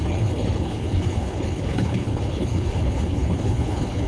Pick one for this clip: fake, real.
fake